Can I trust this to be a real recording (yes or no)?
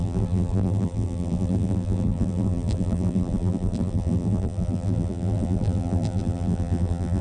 no